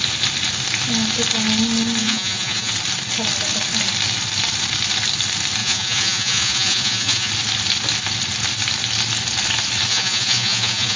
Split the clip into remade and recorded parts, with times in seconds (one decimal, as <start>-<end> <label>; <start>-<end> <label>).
0.0-2.0 recorded; 2.0-2.7 remade; 2.7-5.6 recorded; 5.6-7.3 remade; 7.3-9.9 recorded; 9.9-11.0 remade